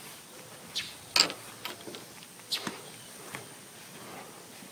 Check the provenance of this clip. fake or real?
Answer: real